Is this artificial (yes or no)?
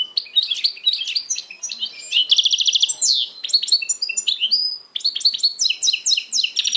no